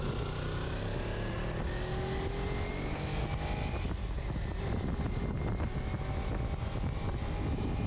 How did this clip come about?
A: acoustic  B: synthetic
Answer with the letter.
A